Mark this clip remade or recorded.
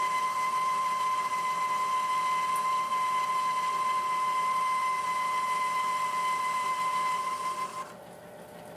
recorded